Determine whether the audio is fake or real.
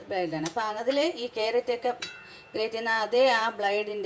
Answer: fake